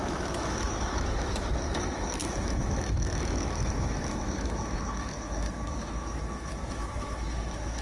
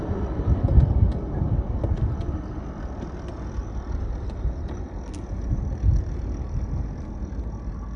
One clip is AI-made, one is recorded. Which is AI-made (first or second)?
first